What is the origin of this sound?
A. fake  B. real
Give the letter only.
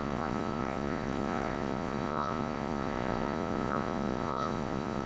A